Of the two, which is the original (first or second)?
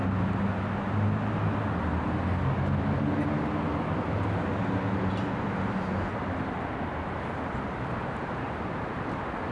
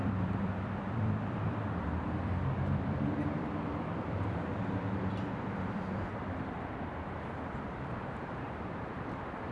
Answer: first